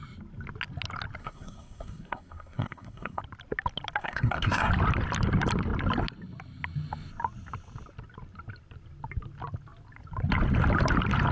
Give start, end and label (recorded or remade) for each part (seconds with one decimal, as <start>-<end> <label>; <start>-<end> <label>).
0.0-1.2 recorded; 1.2-3.2 remade; 3.2-4.0 recorded; 4.0-4.7 remade; 4.7-11.3 recorded